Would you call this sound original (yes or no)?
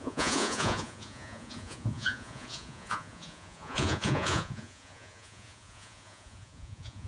no